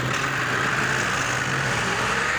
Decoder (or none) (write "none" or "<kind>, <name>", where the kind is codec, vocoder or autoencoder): none